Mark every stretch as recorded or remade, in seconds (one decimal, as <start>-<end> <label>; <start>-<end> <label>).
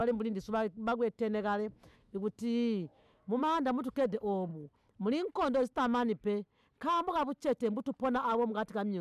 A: 0.0-3.4 remade; 3.4-9.0 recorded